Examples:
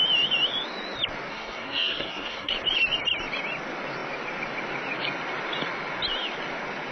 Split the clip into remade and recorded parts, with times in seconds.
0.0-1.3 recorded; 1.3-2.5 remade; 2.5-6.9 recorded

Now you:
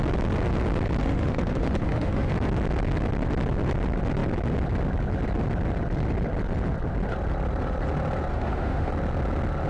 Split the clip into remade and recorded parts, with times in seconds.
0.0-1.0 recorded; 1.0-2.3 remade; 2.3-8.3 recorded; 8.3-8.9 remade; 8.9-9.7 recorded

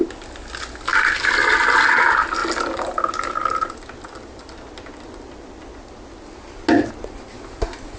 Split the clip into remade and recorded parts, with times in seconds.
0.0-8.0 recorded